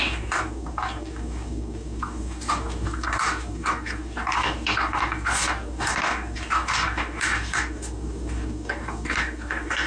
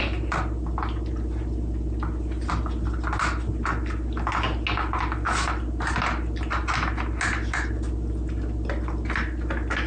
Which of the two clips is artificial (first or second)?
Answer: first